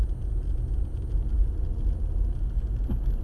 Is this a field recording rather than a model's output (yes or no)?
yes